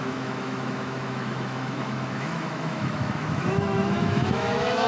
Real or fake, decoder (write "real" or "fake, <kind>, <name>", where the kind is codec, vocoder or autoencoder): fake, autoencoder, DAC-VAE